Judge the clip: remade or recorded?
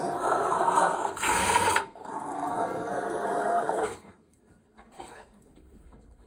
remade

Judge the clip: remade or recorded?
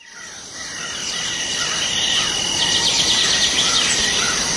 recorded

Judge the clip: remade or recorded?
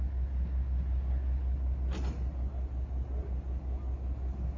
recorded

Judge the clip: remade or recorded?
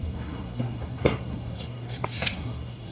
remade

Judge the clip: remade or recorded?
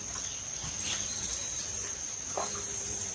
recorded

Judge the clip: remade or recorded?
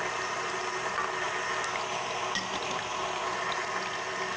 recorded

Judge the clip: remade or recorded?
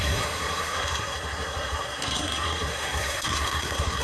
remade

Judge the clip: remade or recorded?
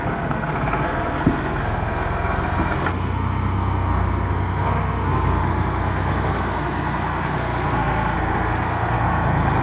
remade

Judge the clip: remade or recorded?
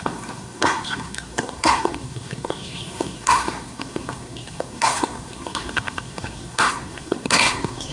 remade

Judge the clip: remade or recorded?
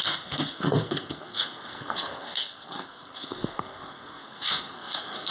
remade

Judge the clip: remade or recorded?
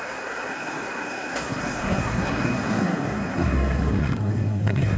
remade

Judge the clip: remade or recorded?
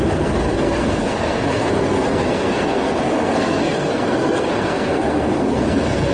remade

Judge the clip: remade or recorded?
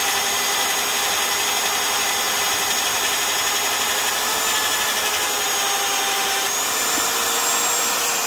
recorded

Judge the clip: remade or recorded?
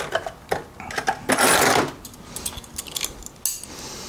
recorded